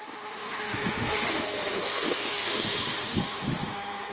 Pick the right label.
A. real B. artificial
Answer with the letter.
B